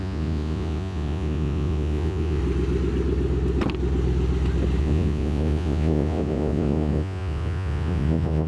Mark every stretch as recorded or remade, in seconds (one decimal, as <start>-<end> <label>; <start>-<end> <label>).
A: 0.0-2.4 remade; 2.4-4.8 recorded; 4.8-8.5 remade